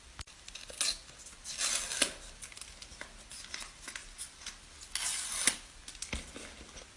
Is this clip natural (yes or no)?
yes